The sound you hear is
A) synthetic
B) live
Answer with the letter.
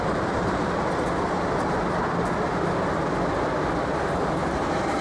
B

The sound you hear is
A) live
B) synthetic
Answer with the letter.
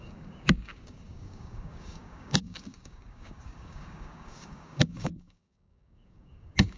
B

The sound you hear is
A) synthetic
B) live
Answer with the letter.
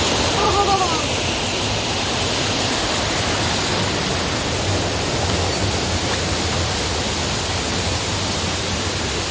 B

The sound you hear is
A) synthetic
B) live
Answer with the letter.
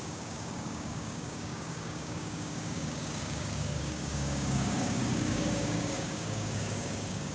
A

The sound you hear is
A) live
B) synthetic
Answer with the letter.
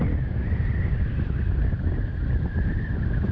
A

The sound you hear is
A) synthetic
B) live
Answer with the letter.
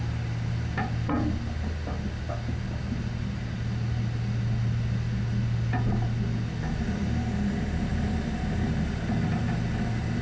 B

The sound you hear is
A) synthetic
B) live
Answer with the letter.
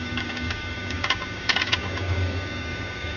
A